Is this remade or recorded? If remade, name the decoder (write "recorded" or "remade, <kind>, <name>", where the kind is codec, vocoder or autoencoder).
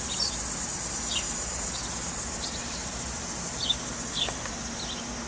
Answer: recorded